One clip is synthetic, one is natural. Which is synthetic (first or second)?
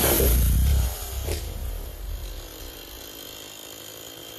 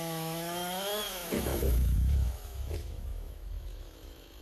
second